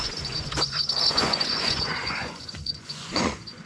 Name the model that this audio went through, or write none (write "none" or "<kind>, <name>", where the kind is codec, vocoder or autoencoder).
vocoder, Vocos